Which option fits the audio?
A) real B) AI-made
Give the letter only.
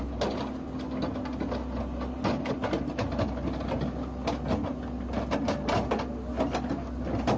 A